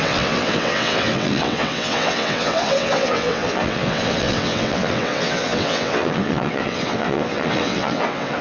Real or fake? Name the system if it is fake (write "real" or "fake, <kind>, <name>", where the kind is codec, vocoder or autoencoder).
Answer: fake, vocoder, WaveNeXt